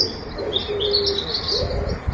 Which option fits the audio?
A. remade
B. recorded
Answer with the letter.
B